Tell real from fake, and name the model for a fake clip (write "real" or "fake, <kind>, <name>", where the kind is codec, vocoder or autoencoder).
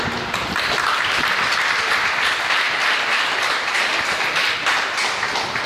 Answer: real